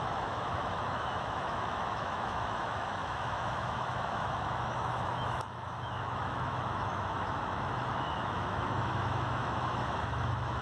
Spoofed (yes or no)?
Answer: yes